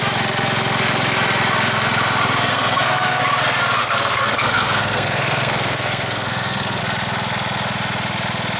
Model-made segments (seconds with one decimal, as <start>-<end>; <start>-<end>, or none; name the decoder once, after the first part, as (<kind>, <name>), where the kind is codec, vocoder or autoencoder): 2.5-3.2 (codec, SNAC); 3.8-6.8